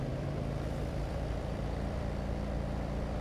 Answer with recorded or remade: remade